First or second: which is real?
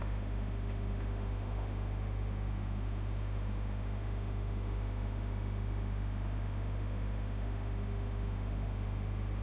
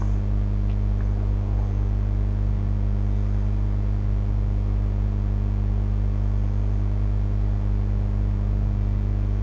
second